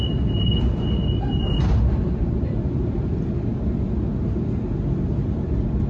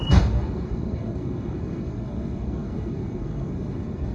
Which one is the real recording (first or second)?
first